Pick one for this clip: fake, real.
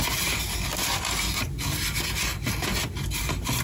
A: real